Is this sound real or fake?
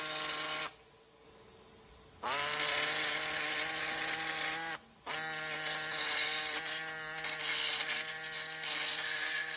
real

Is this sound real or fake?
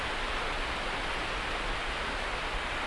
real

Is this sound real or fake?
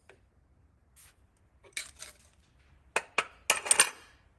real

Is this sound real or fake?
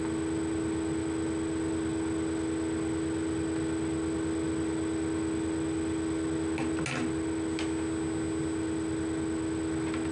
real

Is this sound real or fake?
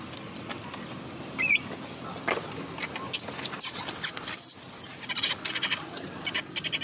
real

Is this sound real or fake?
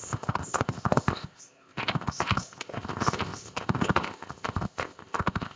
fake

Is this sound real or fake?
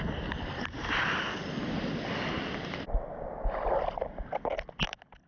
real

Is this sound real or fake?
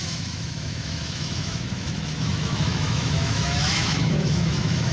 fake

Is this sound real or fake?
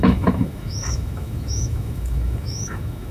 fake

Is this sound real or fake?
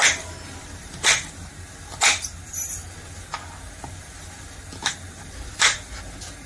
real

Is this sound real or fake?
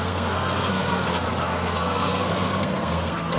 fake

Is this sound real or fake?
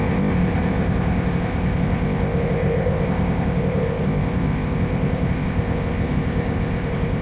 fake